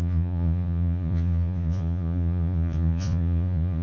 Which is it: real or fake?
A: fake